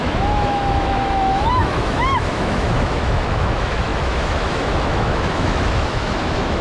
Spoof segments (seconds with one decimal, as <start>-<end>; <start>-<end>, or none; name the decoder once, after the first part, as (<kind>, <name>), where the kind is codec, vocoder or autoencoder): 0.0-6.6 (autoencoder, DAC-VAE)

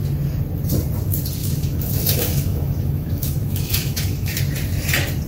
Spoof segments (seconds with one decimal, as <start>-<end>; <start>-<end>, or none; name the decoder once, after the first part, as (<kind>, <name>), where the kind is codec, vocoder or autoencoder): 1.4-4.4 (autoencoder, DAC-VAE)

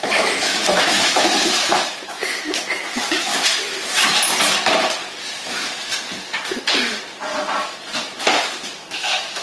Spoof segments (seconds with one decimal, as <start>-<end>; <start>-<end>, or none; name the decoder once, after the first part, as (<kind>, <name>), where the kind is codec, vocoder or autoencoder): 0.0-3.3 (autoencoder, DAC-VAE); 6.5-6.9; 8.5-9.4